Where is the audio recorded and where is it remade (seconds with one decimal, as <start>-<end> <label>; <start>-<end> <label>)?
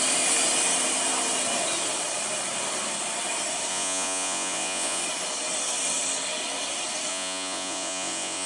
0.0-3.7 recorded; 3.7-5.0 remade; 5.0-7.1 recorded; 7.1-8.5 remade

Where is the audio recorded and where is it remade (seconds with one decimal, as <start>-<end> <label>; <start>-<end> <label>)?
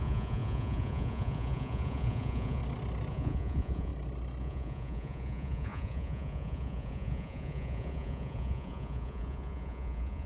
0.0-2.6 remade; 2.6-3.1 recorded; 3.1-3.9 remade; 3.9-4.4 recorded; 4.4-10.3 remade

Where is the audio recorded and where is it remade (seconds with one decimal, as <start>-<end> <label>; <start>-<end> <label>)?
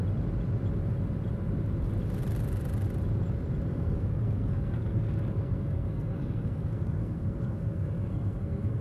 0.0-3.7 recorded; 3.7-8.8 remade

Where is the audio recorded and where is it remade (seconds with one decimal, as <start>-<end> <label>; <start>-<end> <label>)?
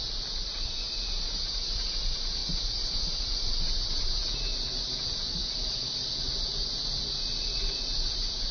0.0-8.5 recorded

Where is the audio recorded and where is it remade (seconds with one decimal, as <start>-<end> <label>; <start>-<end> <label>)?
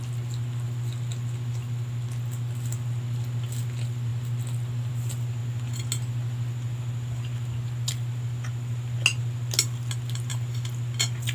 0.0-11.3 recorded